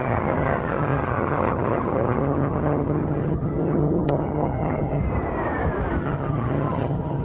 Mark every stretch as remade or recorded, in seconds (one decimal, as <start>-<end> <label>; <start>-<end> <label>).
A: 0.0-5.0 remade; 5.0-6.0 recorded; 6.0-7.2 remade